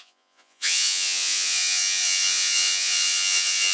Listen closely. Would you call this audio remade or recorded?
remade